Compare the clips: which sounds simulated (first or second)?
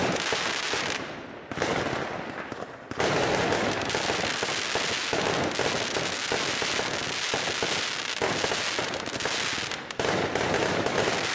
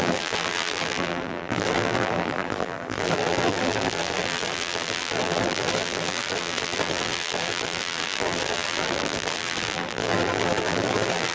second